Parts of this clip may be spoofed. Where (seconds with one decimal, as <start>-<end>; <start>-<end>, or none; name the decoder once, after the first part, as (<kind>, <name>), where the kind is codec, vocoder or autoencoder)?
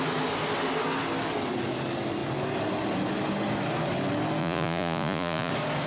4.4-5.5 (vocoder, Vocos)